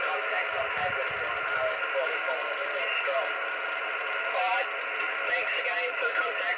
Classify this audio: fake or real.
real